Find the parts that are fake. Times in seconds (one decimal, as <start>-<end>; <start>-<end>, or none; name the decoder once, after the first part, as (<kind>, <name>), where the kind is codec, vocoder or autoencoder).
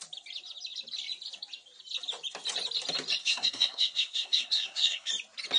3.2-5.1 (codec, SNAC)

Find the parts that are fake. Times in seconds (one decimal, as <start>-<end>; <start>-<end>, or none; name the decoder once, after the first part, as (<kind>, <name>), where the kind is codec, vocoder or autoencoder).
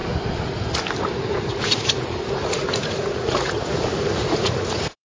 1.2-5.1 (vocoder, Vocos)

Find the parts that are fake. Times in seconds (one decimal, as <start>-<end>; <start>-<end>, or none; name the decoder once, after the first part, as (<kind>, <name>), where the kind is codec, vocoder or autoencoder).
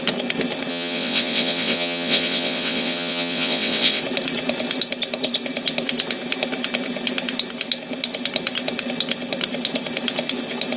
0.7-4.0 (vocoder, WaveNeXt)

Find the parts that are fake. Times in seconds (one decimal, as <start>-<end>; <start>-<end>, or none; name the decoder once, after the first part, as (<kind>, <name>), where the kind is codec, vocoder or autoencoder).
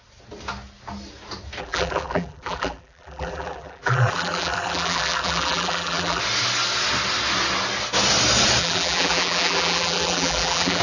1.6-6.2 (vocoder, BigVGAN v2); 8.6-10.8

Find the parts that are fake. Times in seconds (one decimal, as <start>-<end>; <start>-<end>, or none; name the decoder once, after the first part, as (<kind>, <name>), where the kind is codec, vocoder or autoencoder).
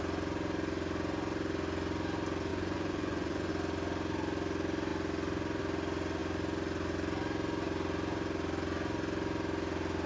2.5-3.5 (vocoder, Vocos)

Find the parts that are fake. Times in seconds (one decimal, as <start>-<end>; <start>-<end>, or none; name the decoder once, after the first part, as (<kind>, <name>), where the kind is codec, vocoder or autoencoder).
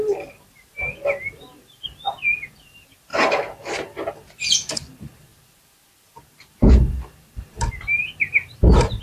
none